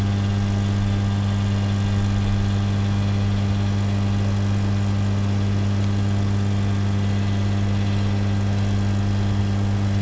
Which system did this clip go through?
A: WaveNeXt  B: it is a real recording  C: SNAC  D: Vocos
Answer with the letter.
B